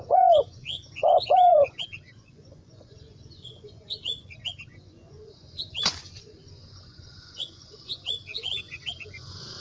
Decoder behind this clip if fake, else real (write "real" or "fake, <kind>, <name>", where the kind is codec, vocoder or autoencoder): fake, vocoder, Vocos